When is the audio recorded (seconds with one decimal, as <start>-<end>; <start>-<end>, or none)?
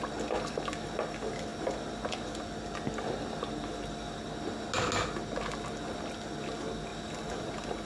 0.0-6.9